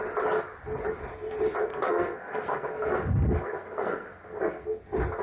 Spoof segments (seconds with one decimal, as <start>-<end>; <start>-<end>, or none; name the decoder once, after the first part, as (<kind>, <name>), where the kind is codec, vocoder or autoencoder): 1.7-4.8 (codec, SNAC)